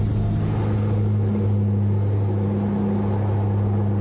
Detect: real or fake real